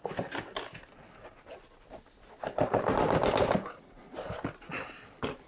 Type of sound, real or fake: real